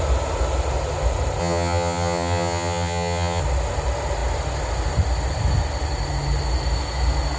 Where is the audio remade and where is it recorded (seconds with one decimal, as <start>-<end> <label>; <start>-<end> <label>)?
0.0-1.4 recorded; 1.4-3.4 remade; 3.4-7.4 recorded